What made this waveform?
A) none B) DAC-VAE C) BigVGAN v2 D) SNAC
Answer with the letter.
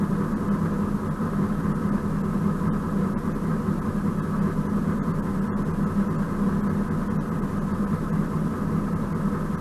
A